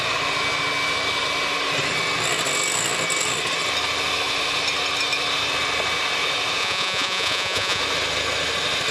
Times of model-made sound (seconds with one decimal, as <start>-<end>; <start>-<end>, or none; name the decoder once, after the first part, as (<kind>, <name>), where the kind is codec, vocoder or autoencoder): 6.6-7.8 (vocoder, Vocos)